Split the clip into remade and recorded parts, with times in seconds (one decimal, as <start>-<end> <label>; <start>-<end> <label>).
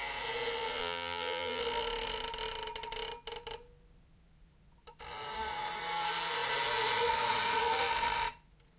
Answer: 0.0-0.8 recorded; 0.8-1.6 remade; 1.6-8.8 recorded